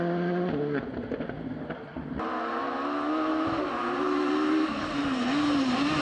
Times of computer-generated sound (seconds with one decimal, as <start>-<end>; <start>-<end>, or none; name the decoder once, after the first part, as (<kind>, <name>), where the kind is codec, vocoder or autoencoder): none